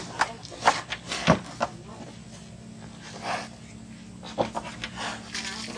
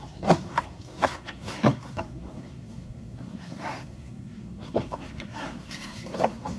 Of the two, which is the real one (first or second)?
first